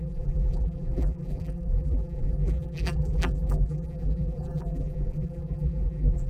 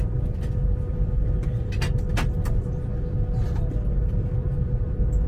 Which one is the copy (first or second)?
first